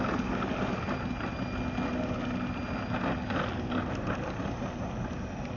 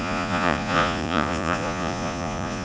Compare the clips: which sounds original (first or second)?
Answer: first